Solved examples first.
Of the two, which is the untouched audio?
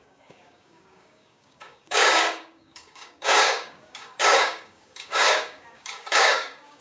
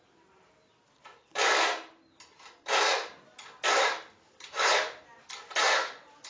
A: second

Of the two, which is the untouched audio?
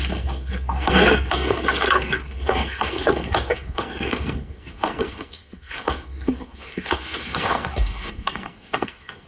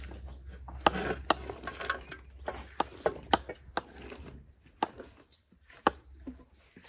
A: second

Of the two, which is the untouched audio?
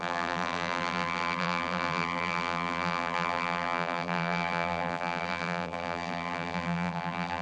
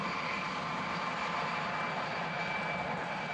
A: second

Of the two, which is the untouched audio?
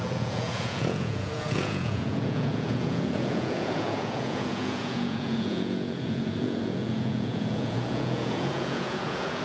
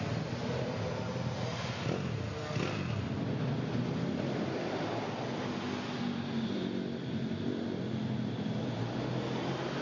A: second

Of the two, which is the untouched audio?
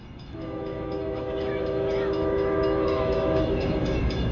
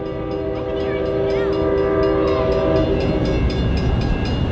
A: second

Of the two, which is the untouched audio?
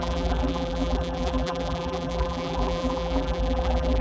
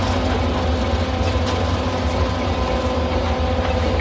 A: second